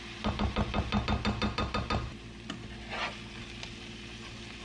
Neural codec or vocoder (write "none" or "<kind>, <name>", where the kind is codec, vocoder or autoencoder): none